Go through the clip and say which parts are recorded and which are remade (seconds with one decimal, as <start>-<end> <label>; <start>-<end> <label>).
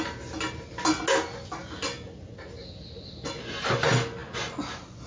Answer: 0.0-5.1 recorded